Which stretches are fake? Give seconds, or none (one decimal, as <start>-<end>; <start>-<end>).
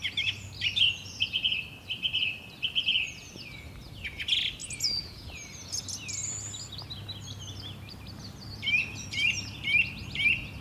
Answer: 4.6-5.3